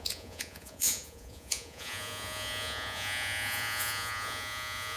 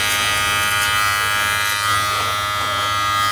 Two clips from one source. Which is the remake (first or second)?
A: first